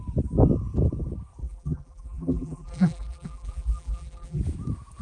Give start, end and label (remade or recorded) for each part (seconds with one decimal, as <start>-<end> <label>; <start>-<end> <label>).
0.0-1.4 recorded; 1.4-4.4 remade; 4.4-5.0 recorded